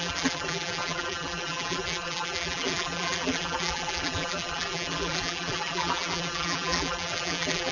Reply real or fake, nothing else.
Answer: fake